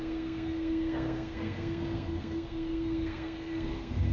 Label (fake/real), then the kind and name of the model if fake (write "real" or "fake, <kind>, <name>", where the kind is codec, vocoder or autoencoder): fake, codec, SNAC